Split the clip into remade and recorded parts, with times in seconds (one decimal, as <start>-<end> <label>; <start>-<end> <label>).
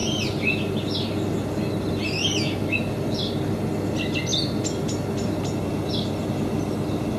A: 0.0-7.2 recorded